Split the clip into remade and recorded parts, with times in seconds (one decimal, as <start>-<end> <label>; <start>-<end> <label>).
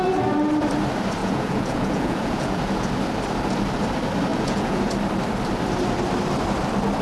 0.0-1.2 recorded; 1.2-2.9 remade; 2.9-4.3 recorded; 4.3-4.8 remade; 4.8-7.0 recorded